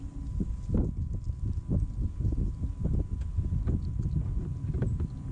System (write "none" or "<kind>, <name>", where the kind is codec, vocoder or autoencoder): none